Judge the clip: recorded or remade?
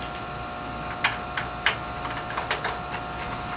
recorded